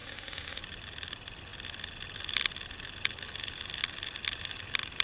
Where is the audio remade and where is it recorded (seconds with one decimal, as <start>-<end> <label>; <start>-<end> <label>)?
0.0-0.6 remade; 0.6-5.0 recorded